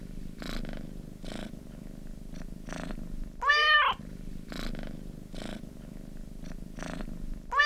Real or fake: real